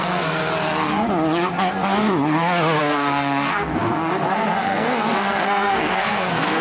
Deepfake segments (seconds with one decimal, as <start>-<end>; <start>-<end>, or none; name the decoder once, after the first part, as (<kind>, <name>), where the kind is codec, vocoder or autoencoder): 0.0-0.4 (codec, SNAC); 2.8-6.6